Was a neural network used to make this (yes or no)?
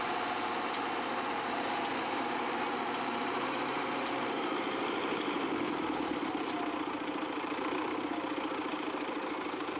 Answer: yes